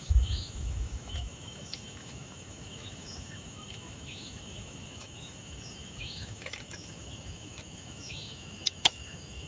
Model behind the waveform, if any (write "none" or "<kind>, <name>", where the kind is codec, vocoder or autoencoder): autoencoder, DAC-VAE